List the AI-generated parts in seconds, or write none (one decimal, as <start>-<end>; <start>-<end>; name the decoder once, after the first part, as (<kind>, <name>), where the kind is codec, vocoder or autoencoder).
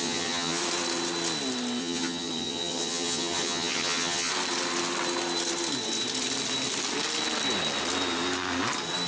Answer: 0.0-0.6 (vocoder, HiFi-GAN); 1.8-4.3